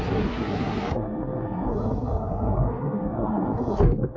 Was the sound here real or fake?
fake